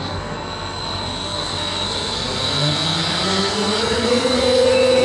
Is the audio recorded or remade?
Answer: remade